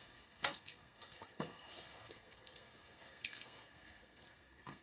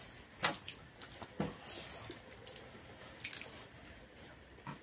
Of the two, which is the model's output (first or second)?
first